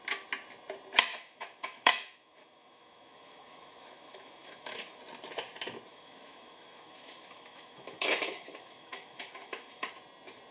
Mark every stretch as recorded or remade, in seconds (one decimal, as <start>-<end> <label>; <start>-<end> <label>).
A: 0.0-1.1 recorded; 1.1-5.0 remade; 5.0-5.9 recorded; 5.9-9.9 remade; 9.9-10.5 recorded